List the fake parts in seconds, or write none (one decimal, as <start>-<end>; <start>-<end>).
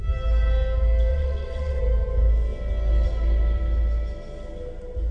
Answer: 1.1-1.8